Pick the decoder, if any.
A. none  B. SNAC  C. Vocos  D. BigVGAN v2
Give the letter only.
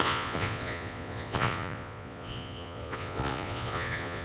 C